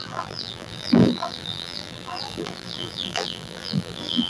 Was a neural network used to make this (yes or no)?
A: yes